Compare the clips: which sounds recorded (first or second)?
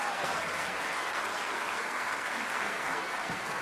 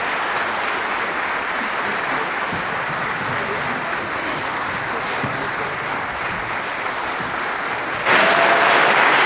second